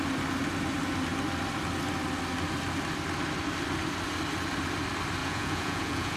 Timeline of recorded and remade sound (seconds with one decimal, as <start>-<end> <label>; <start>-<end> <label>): 0.0-5.2 recorded; 5.2-6.2 remade